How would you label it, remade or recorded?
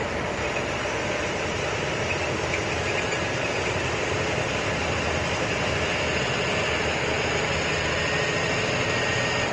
recorded